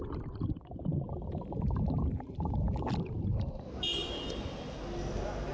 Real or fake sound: real